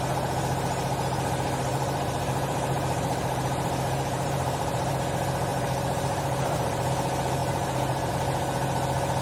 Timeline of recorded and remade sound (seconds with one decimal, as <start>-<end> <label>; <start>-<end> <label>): 0.0-1.7 recorded; 1.7-4.9 remade; 4.9-5.5 recorded; 5.5-6.9 remade; 6.9-7.4 recorded; 7.4-8.1 remade; 8.1-9.2 recorded